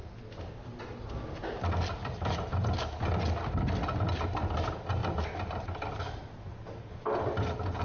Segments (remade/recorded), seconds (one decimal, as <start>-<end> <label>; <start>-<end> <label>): 0.0-7.8 recorded